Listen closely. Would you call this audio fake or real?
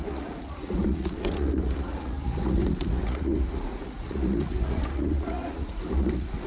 fake